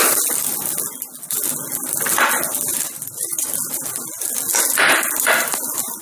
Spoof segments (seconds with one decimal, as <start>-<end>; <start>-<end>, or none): 2.7-3.5